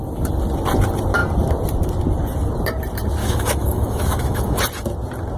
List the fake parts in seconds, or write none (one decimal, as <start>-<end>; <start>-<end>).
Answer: 3.2-4.6